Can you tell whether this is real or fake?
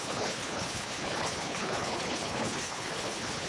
fake